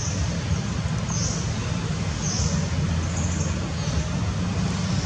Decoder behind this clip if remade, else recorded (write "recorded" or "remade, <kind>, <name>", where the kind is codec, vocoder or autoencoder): recorded